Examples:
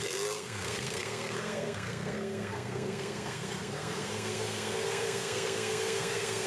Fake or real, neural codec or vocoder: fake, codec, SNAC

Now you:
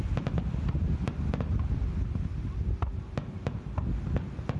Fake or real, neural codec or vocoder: real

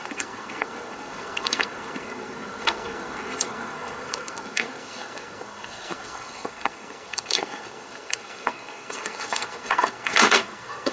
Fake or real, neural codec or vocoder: fake, codec, SNAC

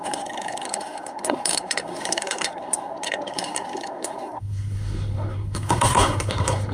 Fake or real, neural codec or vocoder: fake, codec, SNAC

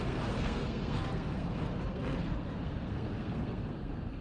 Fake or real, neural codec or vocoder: fake, codec, SNAC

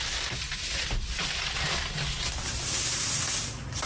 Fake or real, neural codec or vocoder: real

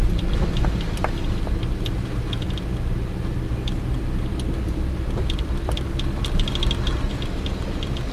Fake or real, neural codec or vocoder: real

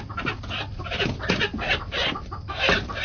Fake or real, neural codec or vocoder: real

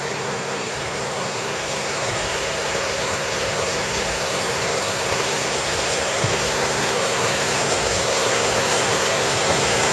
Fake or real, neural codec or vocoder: fake, codec, SNAC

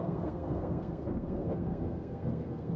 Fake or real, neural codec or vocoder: fake, codec, SNAC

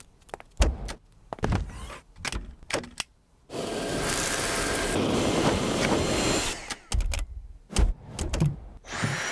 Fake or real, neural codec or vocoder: real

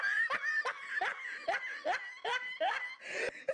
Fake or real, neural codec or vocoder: real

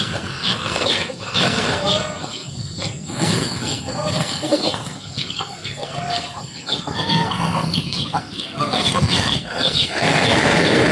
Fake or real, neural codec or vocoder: fake, codec, SNAC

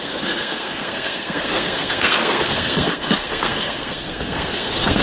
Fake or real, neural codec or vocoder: fake, codec, SNAC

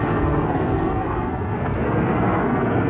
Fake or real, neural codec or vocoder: fake, codec, SNAC